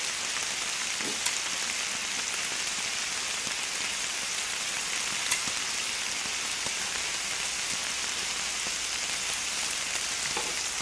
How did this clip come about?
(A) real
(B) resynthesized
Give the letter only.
A